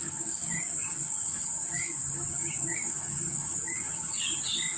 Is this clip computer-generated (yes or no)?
yes